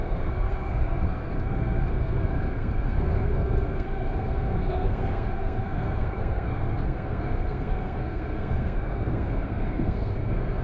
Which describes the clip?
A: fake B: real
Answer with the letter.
A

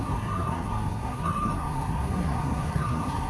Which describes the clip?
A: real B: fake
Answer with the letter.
B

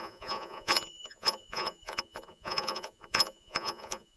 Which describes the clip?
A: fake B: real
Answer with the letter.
A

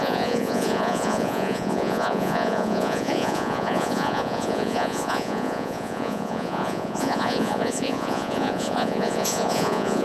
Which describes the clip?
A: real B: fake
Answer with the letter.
B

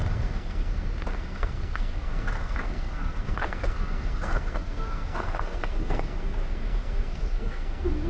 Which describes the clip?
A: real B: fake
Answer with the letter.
B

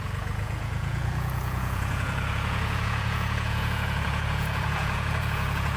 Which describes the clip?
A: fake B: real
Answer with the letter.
A